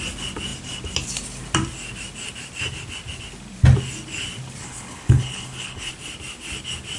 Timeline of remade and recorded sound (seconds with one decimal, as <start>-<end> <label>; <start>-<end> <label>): 0.0-4.6 recorded; 4.6-5.9 remade; 5.9-7.0 recorded